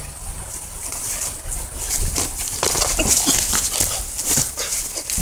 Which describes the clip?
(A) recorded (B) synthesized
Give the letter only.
A